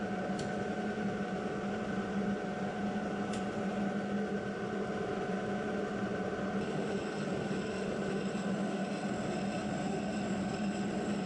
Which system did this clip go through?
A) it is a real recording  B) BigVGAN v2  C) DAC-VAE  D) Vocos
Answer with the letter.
A